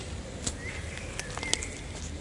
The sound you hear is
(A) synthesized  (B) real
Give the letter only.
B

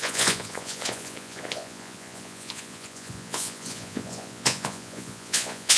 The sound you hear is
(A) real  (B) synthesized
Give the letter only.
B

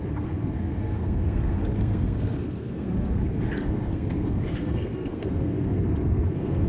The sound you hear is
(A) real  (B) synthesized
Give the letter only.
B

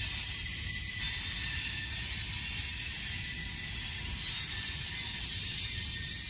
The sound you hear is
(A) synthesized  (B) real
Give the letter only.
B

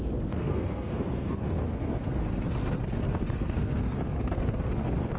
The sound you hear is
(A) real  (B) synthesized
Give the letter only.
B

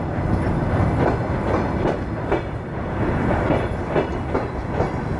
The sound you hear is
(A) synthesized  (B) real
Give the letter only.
B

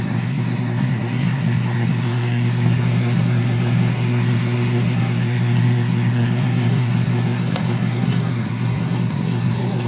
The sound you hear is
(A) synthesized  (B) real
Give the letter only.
A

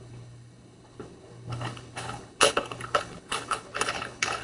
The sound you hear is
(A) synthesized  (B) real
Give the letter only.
A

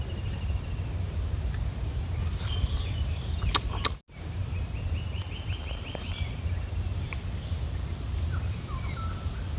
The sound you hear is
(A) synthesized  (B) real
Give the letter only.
B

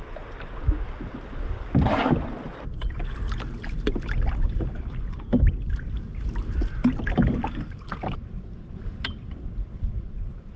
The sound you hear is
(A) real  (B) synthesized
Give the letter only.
A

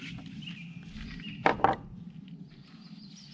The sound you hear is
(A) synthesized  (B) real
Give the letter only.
B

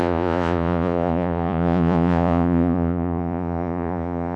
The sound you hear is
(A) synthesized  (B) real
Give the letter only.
A